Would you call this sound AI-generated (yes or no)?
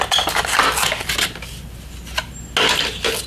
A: no